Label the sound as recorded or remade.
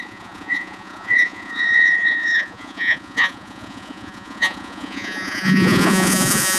remade